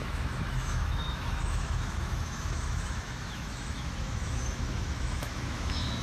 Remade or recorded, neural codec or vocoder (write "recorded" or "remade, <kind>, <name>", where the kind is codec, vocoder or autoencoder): remade, autoencoder, DAC-VAE